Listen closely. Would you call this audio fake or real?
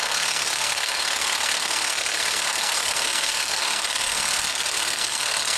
fake